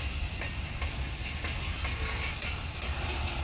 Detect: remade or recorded recorded